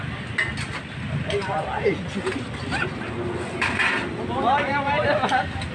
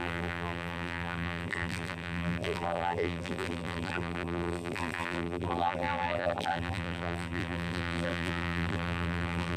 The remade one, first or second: second